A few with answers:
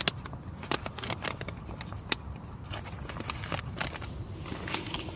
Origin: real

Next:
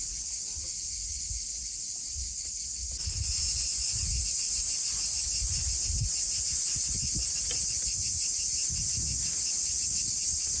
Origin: real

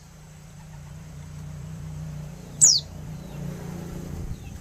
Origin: fake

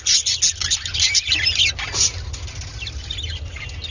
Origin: real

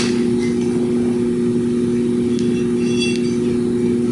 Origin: real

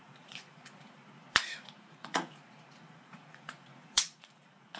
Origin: fake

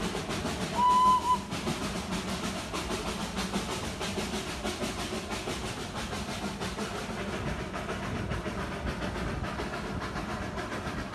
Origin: real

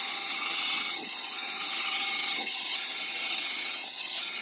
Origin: fake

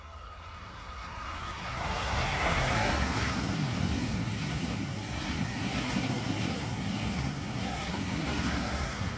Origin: fake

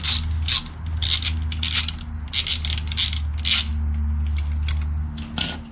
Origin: real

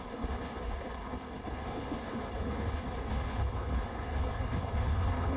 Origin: fake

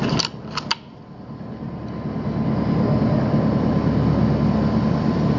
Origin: real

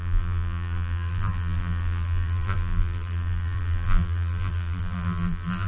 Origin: fake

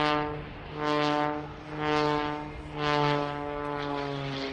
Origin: real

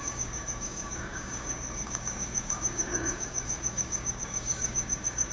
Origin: fake